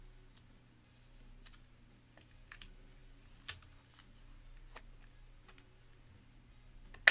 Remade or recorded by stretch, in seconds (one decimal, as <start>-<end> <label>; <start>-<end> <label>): 0.0-7.1 recorded